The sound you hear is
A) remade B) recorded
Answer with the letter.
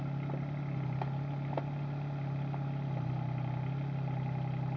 B